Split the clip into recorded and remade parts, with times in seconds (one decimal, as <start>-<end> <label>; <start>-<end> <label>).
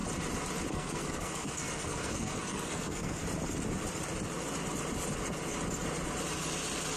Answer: 0.0-0.7 recorded; 0.7-3.2 remade; 3.2-7.0 recorded